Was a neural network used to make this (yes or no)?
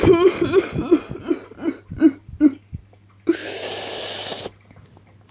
no